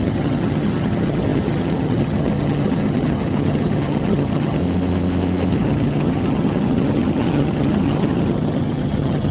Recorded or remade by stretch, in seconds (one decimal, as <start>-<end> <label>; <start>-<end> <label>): 0.0-4.6 remade; 4.6-5.5 recorded; 5.5-9.3 remade